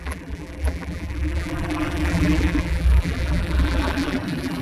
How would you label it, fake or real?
fake